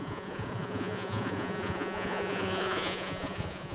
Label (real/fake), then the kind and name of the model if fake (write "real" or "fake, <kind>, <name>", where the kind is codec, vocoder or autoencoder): fake, vocoder, Vocos